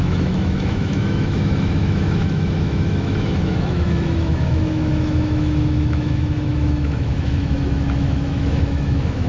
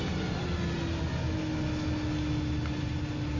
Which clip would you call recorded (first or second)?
second